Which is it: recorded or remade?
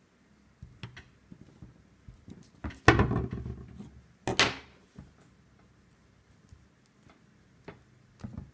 recorded